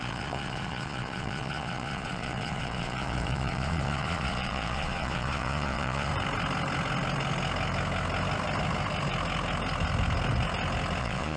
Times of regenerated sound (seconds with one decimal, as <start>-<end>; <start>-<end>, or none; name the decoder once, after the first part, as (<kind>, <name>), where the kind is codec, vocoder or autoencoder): 0.0-6.1 (vocoder, Vocos); 11.0-11.4